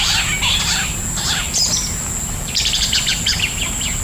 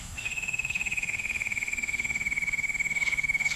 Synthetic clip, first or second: second